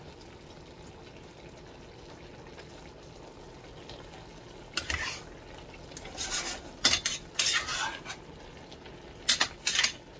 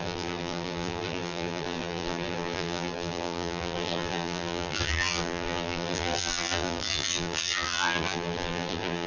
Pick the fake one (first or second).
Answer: second